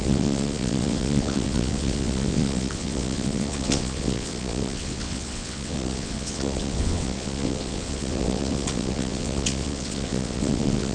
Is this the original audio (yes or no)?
no